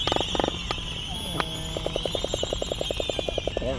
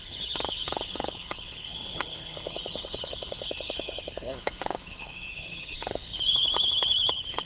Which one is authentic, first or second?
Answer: first